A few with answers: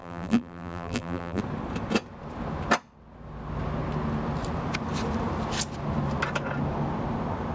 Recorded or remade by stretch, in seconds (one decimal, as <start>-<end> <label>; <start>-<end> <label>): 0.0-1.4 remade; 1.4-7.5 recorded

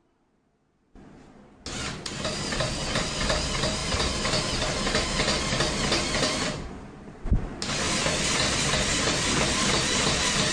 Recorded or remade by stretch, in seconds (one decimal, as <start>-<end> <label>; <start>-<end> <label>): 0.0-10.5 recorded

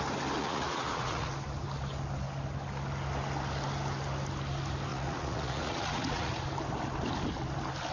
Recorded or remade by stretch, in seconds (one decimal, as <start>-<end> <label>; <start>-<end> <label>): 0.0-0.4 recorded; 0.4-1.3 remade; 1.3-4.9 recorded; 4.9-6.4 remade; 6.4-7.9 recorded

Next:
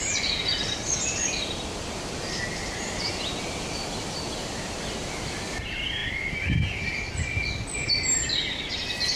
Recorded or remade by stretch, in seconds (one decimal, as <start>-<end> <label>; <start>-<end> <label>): 0.0-9.2 recorded